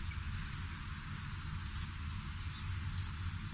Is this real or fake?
real